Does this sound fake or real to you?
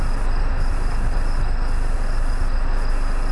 real